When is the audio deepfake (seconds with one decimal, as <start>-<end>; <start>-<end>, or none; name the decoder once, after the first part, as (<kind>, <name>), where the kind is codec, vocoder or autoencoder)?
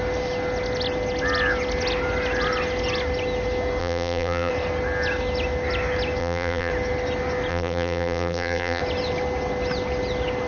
3.8-4.5 (vocoder, BigVGAN v2); 6.2-6.7; 7.5-8.8